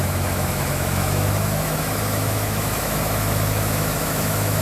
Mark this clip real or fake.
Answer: fake